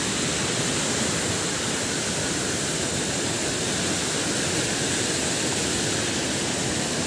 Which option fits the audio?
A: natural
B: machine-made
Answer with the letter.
A